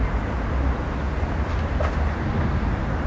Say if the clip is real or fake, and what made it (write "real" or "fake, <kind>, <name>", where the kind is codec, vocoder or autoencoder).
real